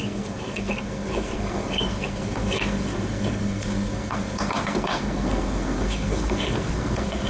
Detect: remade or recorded remade